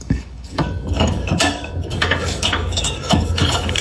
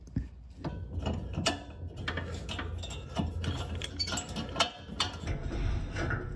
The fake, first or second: first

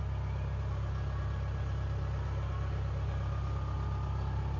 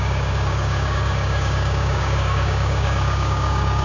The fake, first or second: second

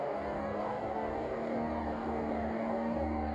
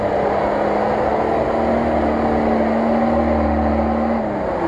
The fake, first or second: first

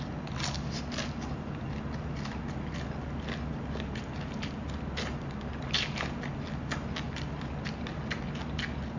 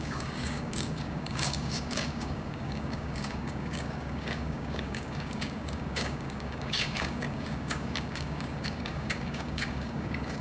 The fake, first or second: second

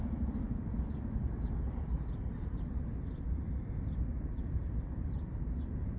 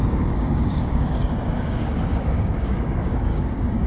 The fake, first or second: second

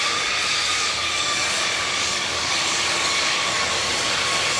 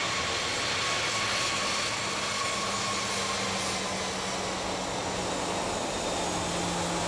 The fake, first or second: first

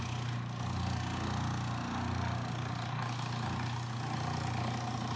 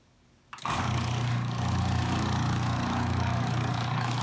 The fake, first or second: second